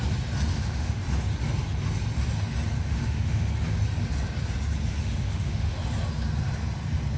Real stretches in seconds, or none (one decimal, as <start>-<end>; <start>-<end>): 0.0-0.5; 1.0-2.8; 3.5-5.0; 5.7-7.2